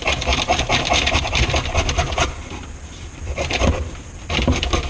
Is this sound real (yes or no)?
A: no